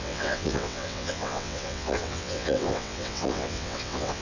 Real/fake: fake